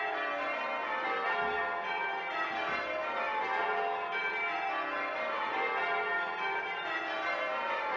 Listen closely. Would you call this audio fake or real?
real